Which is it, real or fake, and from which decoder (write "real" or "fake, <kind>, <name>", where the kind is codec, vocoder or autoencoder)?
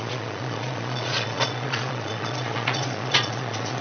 fake, vocoder, Vocos